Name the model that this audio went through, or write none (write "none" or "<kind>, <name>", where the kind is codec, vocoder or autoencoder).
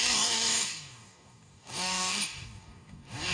codec, DAC